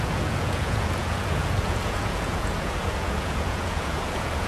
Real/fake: fake